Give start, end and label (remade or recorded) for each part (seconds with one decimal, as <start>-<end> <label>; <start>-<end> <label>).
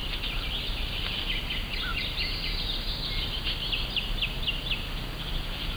0.0-5.8 recorded